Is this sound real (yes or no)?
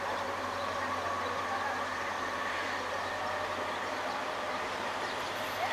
yes